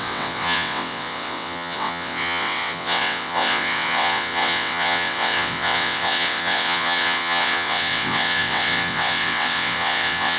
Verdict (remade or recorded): remade